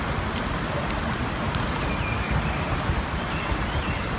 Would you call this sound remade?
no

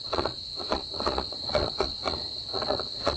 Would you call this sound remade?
yes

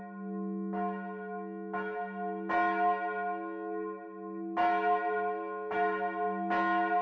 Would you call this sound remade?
no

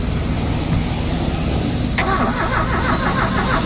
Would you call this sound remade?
no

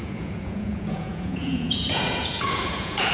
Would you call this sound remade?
yes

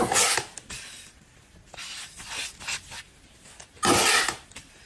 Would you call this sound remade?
no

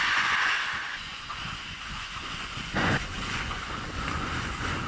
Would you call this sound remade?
yes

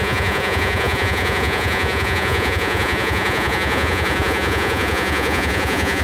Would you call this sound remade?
yes